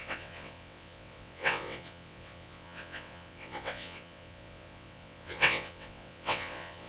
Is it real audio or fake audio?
fake